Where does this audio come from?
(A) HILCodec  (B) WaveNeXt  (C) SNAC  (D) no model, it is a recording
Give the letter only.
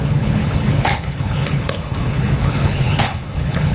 A